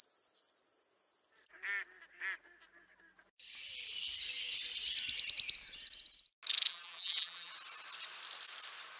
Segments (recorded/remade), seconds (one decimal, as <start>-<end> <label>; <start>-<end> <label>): 0.0-6.7 recorded; 6.7-7.5 remade; 7.5-9.0 recorded